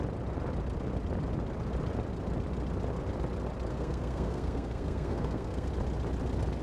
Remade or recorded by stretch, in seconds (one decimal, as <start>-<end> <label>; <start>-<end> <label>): 0.0-3.7 recorded; 3.7-5.7 remade; 5.7-6.6 recorded